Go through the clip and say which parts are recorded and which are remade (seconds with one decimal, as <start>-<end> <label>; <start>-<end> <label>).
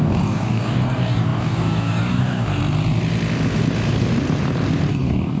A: 0.0-2.6 remade; 2.6-4.9 recorded; 4.9-5.4 remade